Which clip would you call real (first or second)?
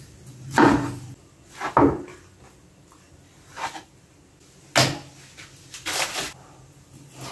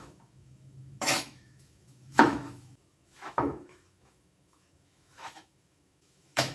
first